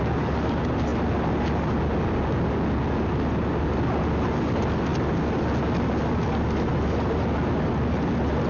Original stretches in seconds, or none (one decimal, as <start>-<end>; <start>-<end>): 0.0-8.5